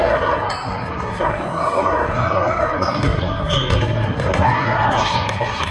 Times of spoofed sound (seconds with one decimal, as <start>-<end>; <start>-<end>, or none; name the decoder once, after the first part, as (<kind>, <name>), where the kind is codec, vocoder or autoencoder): 0.0-5.7 (codec, SNAC)